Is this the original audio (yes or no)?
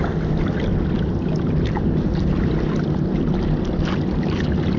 yes